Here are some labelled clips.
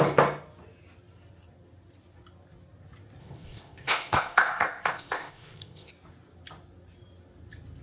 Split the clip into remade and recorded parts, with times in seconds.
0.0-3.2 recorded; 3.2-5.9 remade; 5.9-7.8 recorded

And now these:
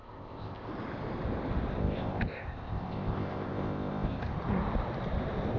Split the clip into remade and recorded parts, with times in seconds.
0.0-0.7 remade; 0.7-1.8 recorded; 1.8-4.3 remade; 4.3-5.6 recorded

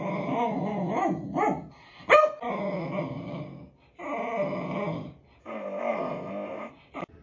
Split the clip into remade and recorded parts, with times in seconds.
0.0-5.4 recorded; 5.4-6.7 remade; 6.7-7.2 recorded